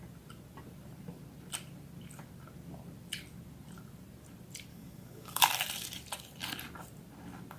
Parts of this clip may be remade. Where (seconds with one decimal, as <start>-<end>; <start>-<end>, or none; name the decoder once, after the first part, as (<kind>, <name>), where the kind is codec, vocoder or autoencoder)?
4.7-5.4 (codec, DAC)